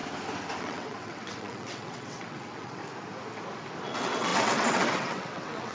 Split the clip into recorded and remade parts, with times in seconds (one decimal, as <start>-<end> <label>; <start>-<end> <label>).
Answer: 0.0-0.6 recorded; 0.6-2.8 remade; 2.8-3.8 recorded; 3.8-5.7 remade